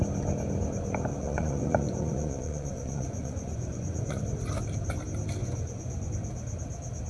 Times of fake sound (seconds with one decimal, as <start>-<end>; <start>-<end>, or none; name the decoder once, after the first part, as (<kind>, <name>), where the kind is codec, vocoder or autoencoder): 1.1-4.2 (vocoder, Vocos); 5.4-6.1

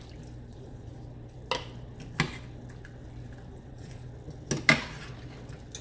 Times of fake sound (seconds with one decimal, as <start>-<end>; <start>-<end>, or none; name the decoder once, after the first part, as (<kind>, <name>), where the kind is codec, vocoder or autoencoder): 0.5-1.0 (vocoder, Vocos); 3.5-4.1

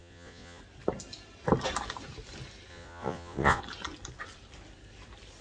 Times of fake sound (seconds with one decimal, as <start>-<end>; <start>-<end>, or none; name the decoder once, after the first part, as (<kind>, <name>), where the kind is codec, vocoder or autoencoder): 0.0-0.6 (vocoder, Vocos); 2.7-3.6

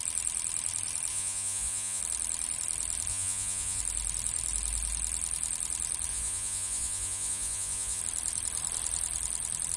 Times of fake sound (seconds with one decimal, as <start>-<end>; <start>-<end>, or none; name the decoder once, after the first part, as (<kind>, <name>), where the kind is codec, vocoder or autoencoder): 1.1-2.0 (vocoder, Vocos); 3.1-3.8; 6.1-8.0